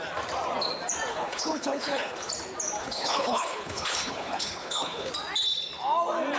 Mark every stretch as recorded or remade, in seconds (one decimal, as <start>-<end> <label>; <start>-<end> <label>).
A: 0.0-1.1 recorded; 1.1-2.3 remade; 2.3-2.8 recorded; 2.8-5.1 remade; 5.1-6.4 recorded